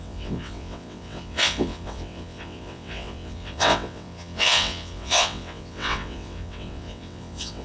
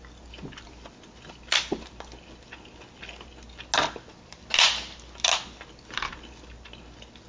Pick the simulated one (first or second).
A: first